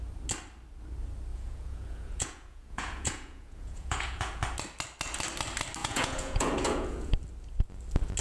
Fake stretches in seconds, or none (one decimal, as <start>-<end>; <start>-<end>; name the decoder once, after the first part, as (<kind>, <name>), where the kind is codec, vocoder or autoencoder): 1.3-4.4 (vocoder, Vocos); 5.8-7.1